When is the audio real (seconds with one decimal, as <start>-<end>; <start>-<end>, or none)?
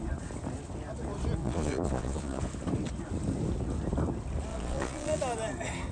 0.0-1.4; 2.4-4.5; 5.2-5.9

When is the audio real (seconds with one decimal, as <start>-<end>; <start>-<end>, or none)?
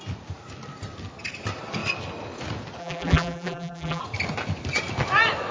0.0-2.8; 4.0-5.5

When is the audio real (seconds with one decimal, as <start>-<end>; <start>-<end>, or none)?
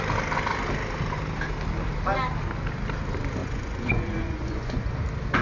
0.0-3.4; 4.9-5.4